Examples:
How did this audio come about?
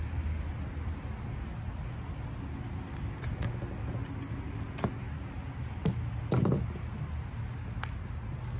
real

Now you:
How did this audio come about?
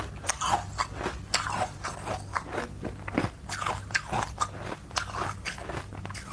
real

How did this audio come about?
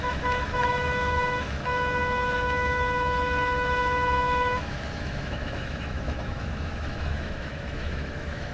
fake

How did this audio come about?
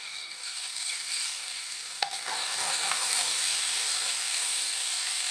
fake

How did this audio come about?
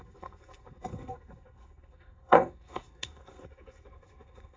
fake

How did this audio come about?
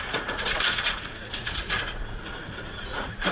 fake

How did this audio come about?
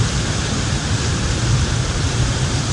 real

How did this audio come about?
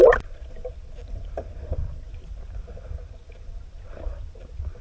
real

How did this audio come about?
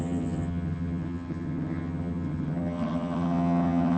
fake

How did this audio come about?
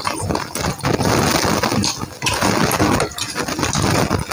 real